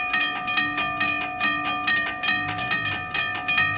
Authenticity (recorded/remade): recorded